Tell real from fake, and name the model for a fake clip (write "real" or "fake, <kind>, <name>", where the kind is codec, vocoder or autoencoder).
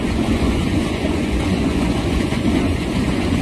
fake, vocoder, Vocos